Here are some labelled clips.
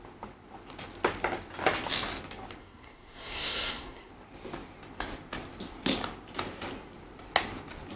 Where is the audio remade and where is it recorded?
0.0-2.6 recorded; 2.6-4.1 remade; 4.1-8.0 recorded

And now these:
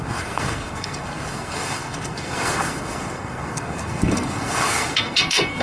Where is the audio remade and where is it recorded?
0.0-5.6 remade

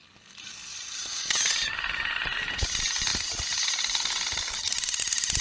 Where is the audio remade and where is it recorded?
0.0-5.4 recorded

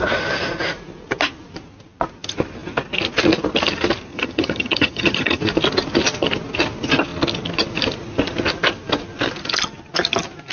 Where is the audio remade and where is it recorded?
0.0-4.1 recorded; 4.1-5.4 remade; 5.4-10.5 recorded